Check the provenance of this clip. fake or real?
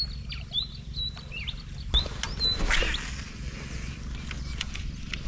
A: real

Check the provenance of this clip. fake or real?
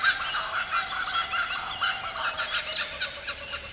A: real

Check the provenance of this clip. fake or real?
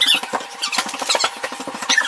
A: real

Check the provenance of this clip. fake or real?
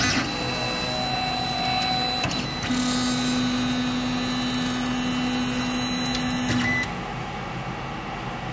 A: real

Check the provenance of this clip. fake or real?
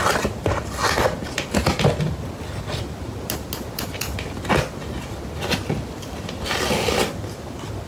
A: real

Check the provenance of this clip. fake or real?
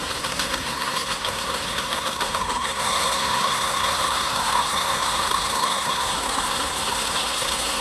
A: fake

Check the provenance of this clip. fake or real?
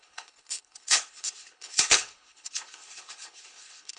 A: fake